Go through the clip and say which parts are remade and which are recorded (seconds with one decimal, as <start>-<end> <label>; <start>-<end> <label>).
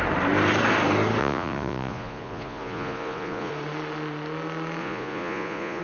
0.0-1.2 recorded; 1.2-3.5 remade; 3.5-4.8 recorded; 4.8-5.8 remade